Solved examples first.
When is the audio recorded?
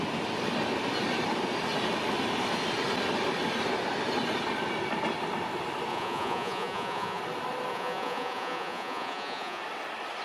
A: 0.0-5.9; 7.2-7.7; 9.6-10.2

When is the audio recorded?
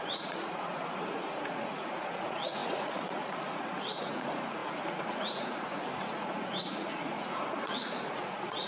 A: none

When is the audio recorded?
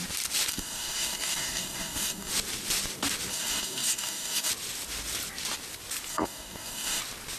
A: 0.0-0.5; 2.3-3.3; 4.5-6.1; 7.0-7.4